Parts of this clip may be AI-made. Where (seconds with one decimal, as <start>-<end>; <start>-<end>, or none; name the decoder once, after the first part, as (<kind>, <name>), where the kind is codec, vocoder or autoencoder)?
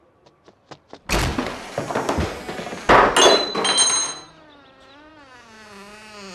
none